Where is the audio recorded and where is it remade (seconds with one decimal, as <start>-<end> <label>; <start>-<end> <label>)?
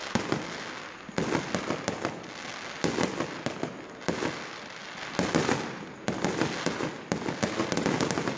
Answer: 0.0-8.4 recorded